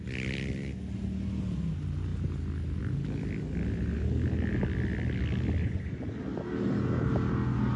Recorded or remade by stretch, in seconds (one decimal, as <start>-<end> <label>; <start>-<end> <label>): 0.0-5.6 recorded; 5.6-6.2 remade; 6.2-7.8 recorded